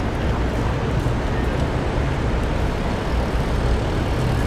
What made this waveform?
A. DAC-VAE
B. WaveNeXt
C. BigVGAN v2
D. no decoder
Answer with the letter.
D